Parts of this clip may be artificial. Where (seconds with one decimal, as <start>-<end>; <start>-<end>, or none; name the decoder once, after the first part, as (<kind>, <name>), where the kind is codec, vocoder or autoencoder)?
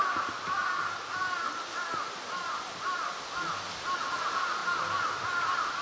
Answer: none